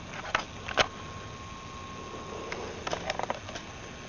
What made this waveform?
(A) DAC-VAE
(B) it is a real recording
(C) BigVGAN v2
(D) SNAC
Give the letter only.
B